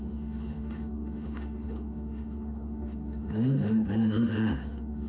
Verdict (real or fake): fake